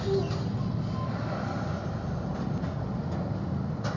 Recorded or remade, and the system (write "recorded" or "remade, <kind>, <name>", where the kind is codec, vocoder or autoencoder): recorded